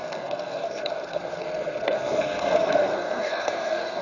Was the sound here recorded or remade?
remade